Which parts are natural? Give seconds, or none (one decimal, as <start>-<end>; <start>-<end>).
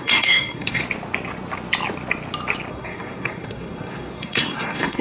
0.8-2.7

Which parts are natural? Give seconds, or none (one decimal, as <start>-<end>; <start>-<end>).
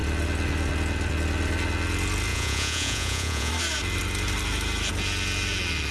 0.0-2.3; 3.5-5.9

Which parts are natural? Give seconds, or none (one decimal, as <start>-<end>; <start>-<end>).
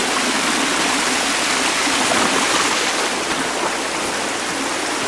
0.0-5.1